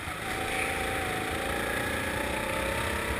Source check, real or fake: real